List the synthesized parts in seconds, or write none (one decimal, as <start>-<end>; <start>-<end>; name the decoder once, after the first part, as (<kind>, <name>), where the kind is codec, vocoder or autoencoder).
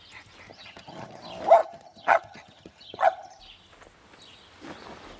0.5-1.2 (vocoder, HiFi-GAN); 1.6-3.4